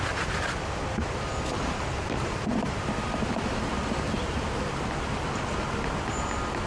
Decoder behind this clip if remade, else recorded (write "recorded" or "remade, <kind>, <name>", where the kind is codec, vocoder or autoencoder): recorded